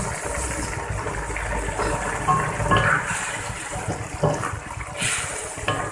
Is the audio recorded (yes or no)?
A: yes